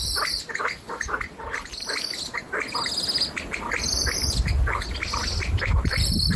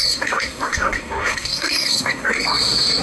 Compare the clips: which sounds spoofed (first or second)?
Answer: second